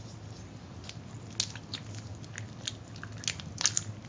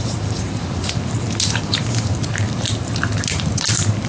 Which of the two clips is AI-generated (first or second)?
second